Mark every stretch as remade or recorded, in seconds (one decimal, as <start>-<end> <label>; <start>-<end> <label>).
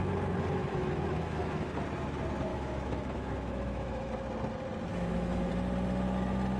0.0-0.6 recorded; 0.6-1.7 remade; 1.7-2.5 recorded; 2.5-4.1 remade; 4.1-4.9 recorded; 4.9-5.5 remade; 5.5-6.6 recorded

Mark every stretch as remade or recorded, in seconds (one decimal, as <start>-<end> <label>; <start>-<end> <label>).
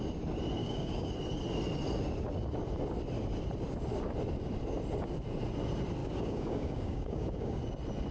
0.0-0.6 recorded; 0.6-1.1 remade; 1.1-6.0 recorded; 6.0-7.6 remade; 7.6-8.1 recorded